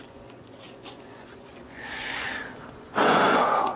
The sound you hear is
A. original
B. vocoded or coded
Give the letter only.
B